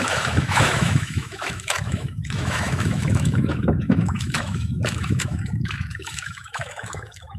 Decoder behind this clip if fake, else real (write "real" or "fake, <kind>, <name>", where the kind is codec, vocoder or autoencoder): fake, autoencoder, DAC-VAE